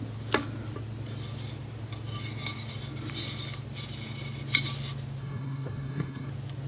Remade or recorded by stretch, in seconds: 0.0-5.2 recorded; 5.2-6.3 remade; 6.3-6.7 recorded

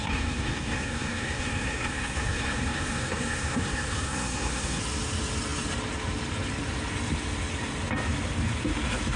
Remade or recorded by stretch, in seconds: 0.0-4.8 remade; 4.8-9.2 recorded